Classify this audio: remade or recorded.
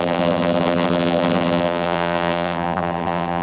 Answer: remade